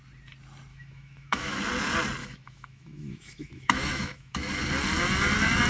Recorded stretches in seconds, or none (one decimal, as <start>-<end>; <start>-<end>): 0.0-0.7; 1.6-2.2; 4.5-5.7